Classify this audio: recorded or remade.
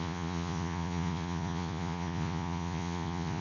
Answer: remade